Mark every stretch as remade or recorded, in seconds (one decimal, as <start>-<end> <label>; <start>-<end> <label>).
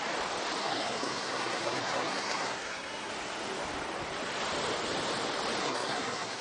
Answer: 0.0-0.6 recorded; 0.6-3.1 remade; 3.1-5.6 recorded; 5.6-6.4 remade